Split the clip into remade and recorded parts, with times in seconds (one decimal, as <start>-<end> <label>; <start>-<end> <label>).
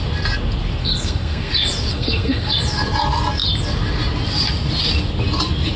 0.0-0.8 recorded; 0.8-1.5 remade; 1.5-1.9 recorded; 1.9-2.5 remade; 2.5-5.8 recorded